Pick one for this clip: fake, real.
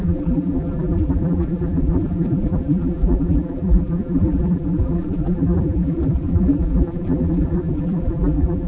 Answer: fake